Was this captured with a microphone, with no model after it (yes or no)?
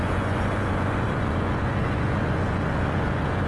no